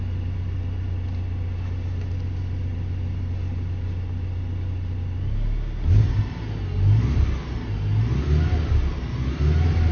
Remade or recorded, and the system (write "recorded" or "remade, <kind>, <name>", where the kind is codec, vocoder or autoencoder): recorded